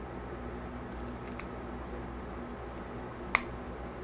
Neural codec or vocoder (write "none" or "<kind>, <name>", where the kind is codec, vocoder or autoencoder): none